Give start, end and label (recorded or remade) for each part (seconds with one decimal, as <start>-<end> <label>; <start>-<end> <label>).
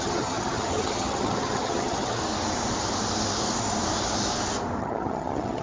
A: 0.0-2.2 remade; 2.2-4.8 recorded; 4.8-5.6 remade